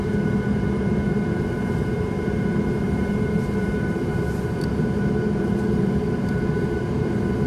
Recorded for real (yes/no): no